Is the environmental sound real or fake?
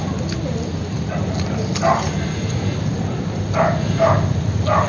real